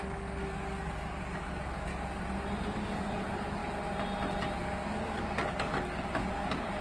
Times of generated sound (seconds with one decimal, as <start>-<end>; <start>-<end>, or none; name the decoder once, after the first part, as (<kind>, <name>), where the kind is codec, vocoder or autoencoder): 0.0-1.9 (codec, DAC); 2.7-3.6; 4.6-6.8